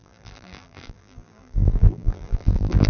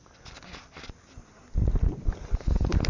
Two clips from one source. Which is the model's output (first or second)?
first